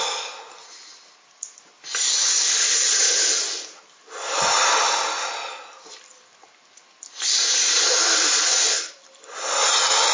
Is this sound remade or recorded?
recorded